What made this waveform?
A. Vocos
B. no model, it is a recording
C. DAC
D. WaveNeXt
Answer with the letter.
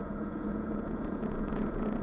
A